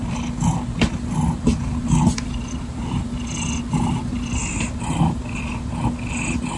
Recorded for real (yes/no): yes